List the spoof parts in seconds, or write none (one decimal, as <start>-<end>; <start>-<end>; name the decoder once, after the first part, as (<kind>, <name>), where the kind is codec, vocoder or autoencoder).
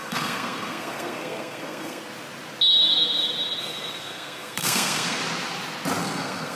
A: 0.0-2.0 (codec, SNAC); 3.6-5.2; 6.0-6.6